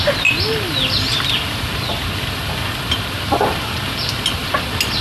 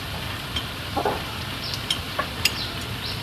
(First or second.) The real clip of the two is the first